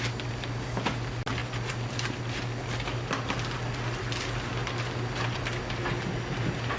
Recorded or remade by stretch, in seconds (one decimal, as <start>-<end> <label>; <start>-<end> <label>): 0.0-6.8 recorded